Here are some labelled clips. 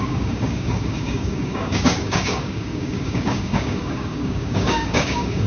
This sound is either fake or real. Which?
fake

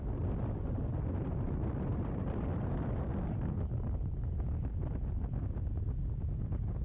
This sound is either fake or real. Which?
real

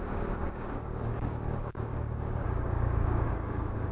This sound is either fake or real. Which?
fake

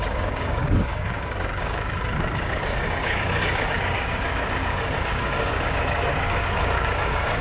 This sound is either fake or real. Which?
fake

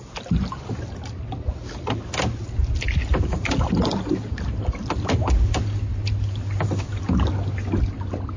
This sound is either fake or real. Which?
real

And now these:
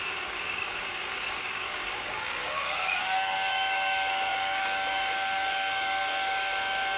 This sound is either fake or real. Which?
fake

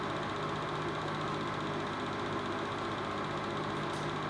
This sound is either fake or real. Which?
real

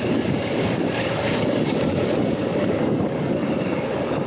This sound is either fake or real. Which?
fake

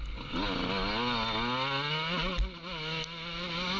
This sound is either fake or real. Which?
real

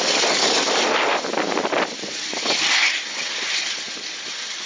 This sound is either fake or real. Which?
real